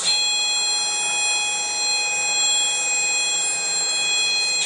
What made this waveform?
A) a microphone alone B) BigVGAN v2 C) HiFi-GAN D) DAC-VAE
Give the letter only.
A